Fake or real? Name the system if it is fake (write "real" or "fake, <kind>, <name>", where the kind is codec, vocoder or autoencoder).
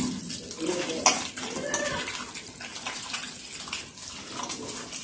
real